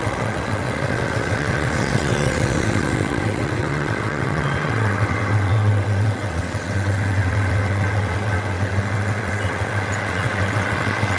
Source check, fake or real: fake